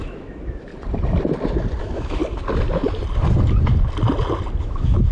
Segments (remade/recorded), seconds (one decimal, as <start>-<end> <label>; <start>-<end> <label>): 0.0-0.7 remade; 0.7-1.8 recorded; 1.8-2.2 remade; 2.2-4.6 recorded; 4.6-5.1 remade